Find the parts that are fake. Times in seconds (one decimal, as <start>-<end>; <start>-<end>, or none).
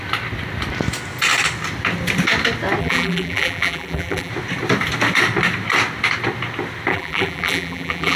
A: 2.8-4.3; 6.9-8.2